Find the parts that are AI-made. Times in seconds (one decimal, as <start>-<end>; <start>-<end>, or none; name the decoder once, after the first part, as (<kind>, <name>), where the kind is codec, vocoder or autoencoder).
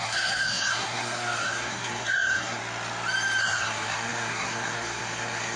0.0-2.6 (codec, SNAC); 3.4-5.6